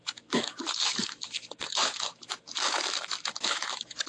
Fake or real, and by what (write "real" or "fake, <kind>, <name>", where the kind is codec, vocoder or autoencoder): fake, autoencoder, DAC-VAE